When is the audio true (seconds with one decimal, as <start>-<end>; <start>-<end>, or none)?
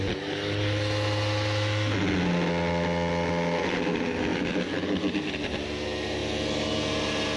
0.0-7.4